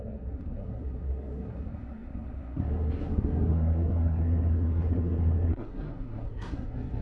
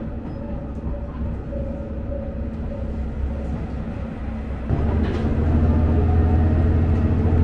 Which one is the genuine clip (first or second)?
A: second